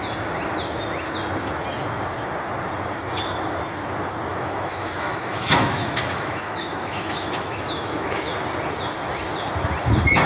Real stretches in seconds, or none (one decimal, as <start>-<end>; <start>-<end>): 0.0-4.3; 8.3-10.3